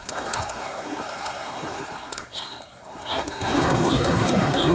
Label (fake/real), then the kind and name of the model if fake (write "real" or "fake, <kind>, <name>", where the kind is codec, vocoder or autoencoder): fake, codec, SNAC